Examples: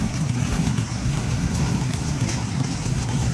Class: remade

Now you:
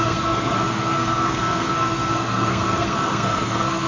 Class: remade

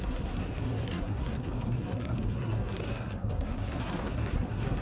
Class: remade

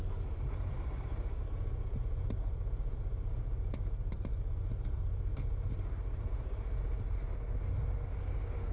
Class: recorded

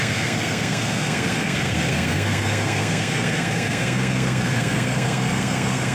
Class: remade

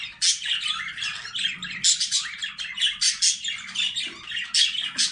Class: recorded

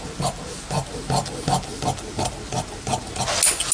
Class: recorded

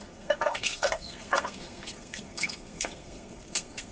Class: remade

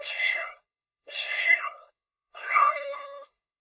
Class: remade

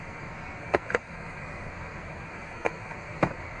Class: remade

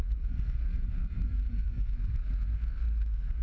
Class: remade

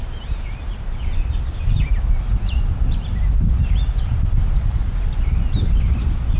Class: recorded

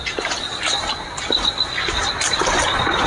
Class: recorded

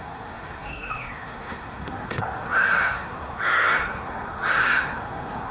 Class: remade